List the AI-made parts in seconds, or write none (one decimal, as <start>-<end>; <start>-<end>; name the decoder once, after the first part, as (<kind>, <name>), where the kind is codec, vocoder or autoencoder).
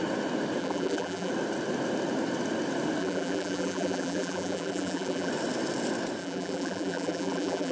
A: 0.6-1.3 (vocoder, BigVGAN v2); 3.0-5.3; 6.2-7.7